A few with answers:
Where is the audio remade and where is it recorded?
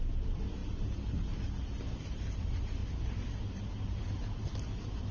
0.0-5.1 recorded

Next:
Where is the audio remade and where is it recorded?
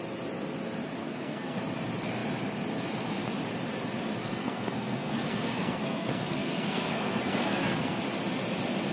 0.0-1.0 recorded; 1.0-1.6 remade; 1.6-4.2 recorded; 4.2-8.0 remade; 8.0-8.9 recorded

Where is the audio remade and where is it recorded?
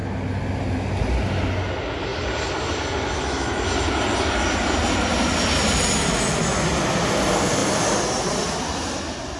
0.0-9.4 recorded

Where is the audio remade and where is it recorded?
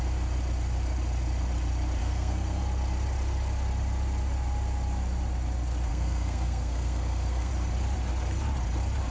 0.0-2.0 recorded; 2.0-2.6 remade; 2.6-5.9 recorded; 5.9-7.5 remade; 7.5-9.1 recorded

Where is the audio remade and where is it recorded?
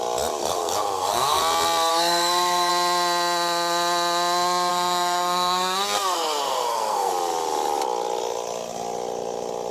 0.0-0.4 recorded; 0.4-1.4 remade; 1.4-1.9 recorded; 1.9-2.7 remade; 2.7-4.7 recorded; 4.7-7.1 remade; 7.1-9.7 recorded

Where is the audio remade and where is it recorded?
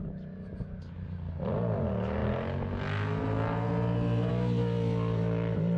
0.0-5.8 recorded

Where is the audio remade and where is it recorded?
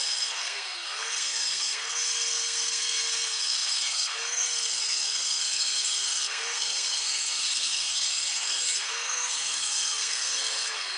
0.0-11.0 remade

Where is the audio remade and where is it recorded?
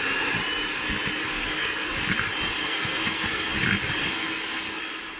0.0-1.3 recorded; 1.3-2.0 remade; 2.0-2.6 recorded; 2.6-3.5 remade; 3.5-4.0 recorded; 4.0-4.8 remade; 4.8-5.2 recorded